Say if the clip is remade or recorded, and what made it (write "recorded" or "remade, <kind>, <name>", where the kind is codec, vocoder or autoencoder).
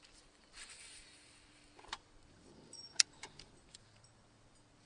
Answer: remade, vocoder, BigVGAN v2